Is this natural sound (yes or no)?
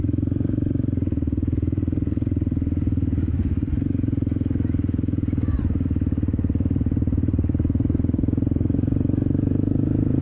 no